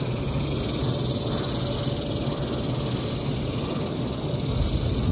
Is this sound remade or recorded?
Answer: recorded